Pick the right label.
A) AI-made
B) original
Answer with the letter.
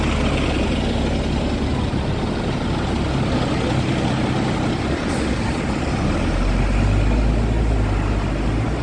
B